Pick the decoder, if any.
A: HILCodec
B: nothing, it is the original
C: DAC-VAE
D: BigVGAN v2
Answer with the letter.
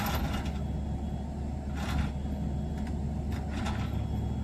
B